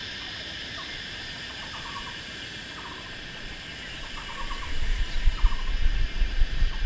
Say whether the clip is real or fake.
fake